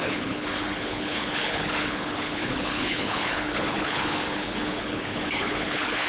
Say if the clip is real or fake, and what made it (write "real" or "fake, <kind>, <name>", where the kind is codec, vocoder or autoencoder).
fake, codec, HILCodec